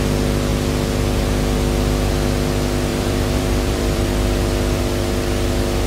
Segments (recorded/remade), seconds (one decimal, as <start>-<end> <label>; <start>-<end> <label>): 0.0-2.9 recorded; 2.9-4.8 remade; 4.8-5.9 recorded